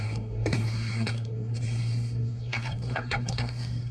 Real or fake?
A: fake